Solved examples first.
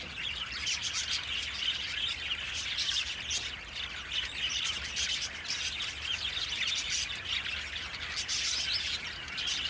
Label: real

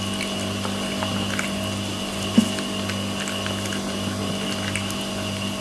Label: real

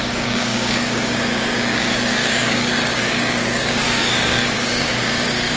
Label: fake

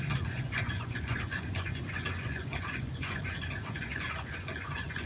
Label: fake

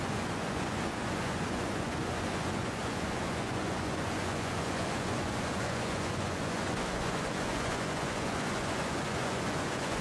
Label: fake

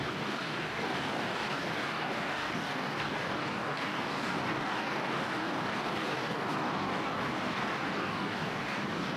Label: fake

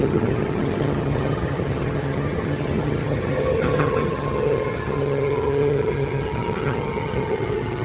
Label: fake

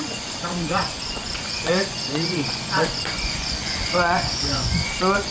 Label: fake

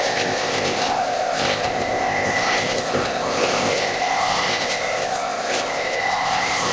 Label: fake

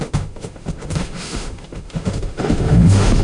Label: fake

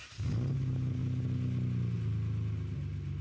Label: real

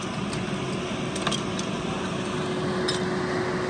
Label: real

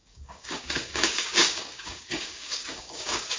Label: fake